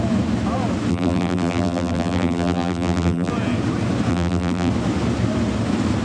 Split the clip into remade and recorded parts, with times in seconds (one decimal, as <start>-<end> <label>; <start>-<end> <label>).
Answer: 0.0-0.9 recorded; 0.9-3.3 remade; 3.3-4.1 recorded; 4.1-4.7 remade; 4.7-6.0 recorded